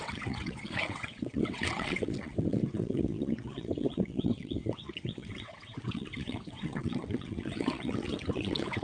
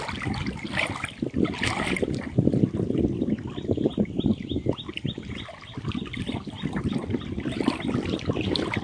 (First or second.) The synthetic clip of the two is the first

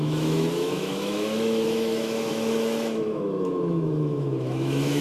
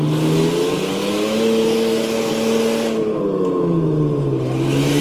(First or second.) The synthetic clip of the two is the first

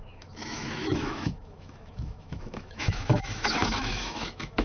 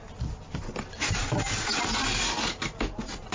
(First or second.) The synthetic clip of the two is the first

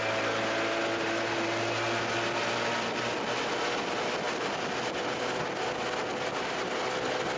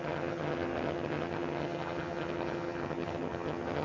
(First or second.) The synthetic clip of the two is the second